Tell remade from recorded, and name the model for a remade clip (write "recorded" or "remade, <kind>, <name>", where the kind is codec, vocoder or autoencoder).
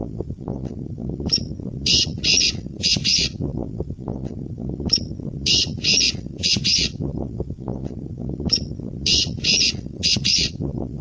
remade, vocoder, Vocos